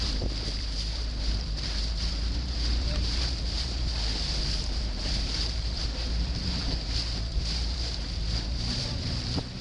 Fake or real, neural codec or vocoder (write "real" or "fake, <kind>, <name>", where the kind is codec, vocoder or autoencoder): fake, vocoder, BigVGAN v2